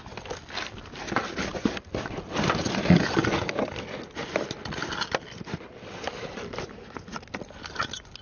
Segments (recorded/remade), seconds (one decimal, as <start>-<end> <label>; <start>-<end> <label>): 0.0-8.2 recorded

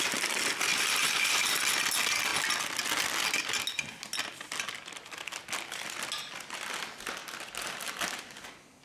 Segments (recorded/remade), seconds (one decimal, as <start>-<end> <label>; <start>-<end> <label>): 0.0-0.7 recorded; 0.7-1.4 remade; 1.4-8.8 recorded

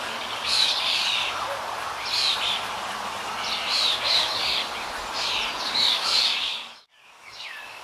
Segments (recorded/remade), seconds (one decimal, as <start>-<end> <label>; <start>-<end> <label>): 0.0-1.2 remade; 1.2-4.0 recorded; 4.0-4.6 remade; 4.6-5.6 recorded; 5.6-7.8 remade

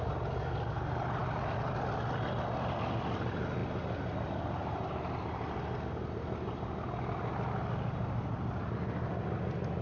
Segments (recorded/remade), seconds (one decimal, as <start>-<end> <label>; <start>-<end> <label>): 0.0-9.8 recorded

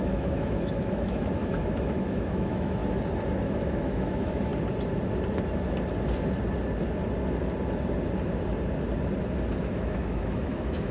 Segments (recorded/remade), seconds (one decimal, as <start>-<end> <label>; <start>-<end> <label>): 0.0-2.8 remade; 2.8-3.4 recorded; 3.4-4.5 remade; 4.5-9.6 recorded; 9.6-10.9 remade

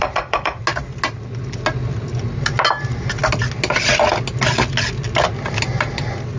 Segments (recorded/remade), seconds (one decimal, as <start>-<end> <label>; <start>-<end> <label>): 0.0-0.6 remade; 0.6-6.4 recorded

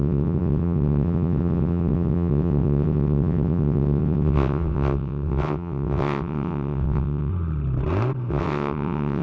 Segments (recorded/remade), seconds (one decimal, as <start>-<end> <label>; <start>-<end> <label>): 0.0-7.3 remade; 7.3-8.3 recorded; 8.3-9.2 remade

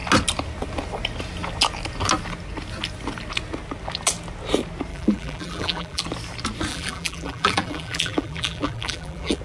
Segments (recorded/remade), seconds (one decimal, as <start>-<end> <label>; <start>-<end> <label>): 0.0-4.9 recorded; 4.9-6.0 remade; 6.0-6.7 recorded; 6.7-9.4 remade